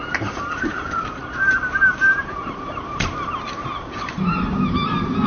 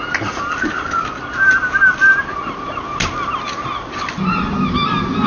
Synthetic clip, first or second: first